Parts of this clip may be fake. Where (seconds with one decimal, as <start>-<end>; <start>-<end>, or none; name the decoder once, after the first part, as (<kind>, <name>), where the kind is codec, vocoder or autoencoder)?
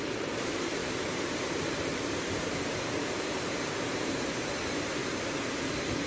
0.0-5.0 (vocoder, BigVGAN v2)